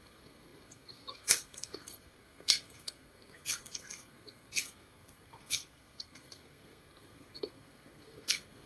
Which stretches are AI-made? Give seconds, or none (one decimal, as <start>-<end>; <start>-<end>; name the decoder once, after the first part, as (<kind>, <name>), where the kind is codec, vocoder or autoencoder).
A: 0.0-8.7 (codec, SNAC)